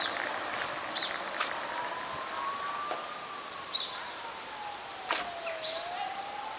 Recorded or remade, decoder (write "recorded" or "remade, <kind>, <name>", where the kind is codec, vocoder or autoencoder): recorded